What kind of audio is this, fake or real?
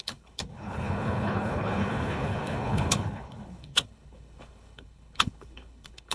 fake